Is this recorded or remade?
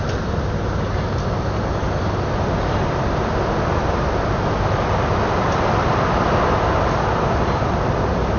recorded